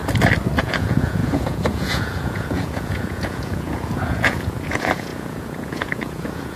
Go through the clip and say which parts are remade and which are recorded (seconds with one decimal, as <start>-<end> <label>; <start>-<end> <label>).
0.0-0.6 recorded; 0.6-6.6 remade